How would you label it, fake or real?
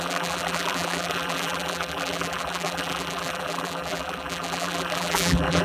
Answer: fake